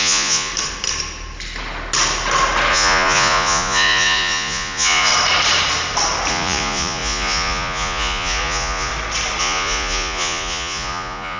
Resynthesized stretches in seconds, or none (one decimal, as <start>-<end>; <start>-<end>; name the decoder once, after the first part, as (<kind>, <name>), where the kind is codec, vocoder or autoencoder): 0.0-0.5 (vocoder, Vocos); 2.7-5.1; 6.3-8.9; 9.4-11.4